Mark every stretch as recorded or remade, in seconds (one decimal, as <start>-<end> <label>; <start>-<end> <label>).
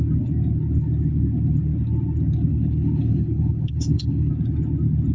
0.0-2.5 recorded; 2.5-4.3 remade; 4.3-5.1 recorded